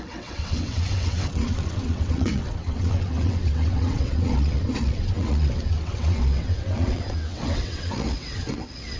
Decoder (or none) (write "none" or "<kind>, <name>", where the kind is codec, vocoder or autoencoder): vocoder, WaveNeXt